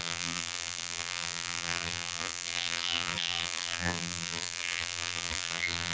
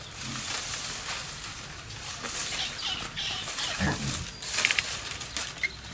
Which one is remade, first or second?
first